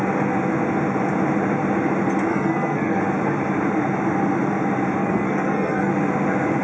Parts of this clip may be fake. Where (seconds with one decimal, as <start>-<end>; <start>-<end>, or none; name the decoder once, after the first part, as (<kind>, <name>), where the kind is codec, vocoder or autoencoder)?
2.3-3.0 (codec, SNAC); 5.0-5.9